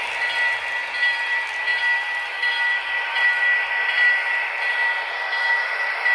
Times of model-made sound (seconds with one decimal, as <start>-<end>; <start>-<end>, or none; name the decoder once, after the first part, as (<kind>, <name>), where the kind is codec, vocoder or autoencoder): none